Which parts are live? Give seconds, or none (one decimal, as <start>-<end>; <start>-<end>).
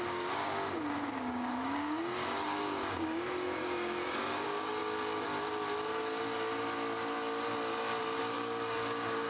4.8-8.2